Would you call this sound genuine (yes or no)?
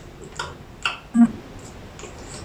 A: yes